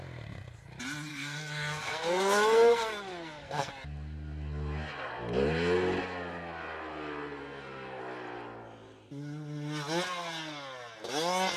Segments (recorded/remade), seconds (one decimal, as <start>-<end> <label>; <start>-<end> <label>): 0.0-1.1 recorded; 1.1-3.7 remade; 3.7-7.4 recorded; 7.4-8.0 remade; 8.0-11.6 recorded